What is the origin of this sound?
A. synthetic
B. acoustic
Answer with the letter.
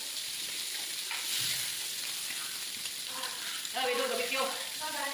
A